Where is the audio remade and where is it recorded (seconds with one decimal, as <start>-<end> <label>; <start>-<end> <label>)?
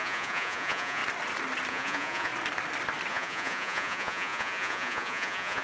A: 0.0-1.0 remade; 1.0-1.7 recorded; 1.7-2.3 remade; 2.3-3.1 recorded; 3.1-5.6 remade